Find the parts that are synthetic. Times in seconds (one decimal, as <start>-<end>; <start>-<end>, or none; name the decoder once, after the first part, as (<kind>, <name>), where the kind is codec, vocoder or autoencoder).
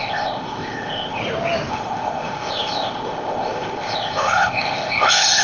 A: 0.0-1.2 (codec, ZipCodec); 1.7-5.4